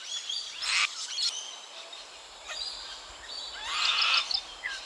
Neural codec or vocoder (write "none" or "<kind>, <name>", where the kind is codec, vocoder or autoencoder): none